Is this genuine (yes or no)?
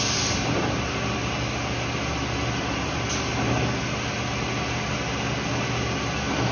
yes